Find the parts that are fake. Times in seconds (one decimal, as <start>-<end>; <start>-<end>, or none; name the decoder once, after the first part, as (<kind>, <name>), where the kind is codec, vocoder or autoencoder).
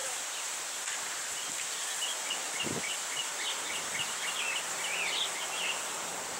0.0-6.4 (vocoder, BigVGAN v2)